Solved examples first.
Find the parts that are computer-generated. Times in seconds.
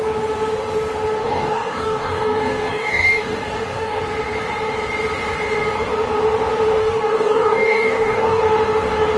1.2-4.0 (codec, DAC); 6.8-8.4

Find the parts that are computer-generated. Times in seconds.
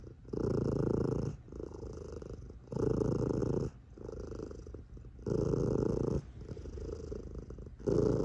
none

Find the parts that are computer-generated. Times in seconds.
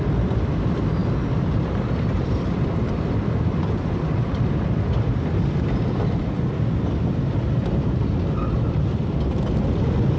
0.0-1.0 (vocoder, BigVGAN v2); 2.1-10.2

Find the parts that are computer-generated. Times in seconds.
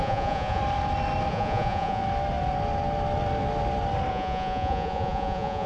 0.0-0.6 (vocoder, Vocos); 1.3-2.0; 4.1-5.7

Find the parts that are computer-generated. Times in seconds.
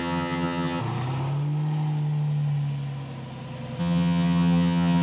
0.0-0.8 (vocoder, HiFi-GAN); 3.8-5.0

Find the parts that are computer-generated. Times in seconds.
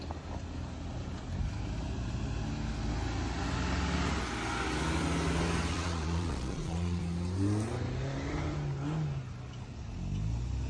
5.7-7.0 (vocoder, Vocos)